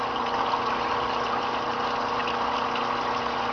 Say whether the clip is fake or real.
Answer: real